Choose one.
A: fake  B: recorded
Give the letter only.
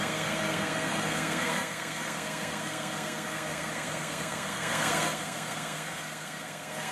A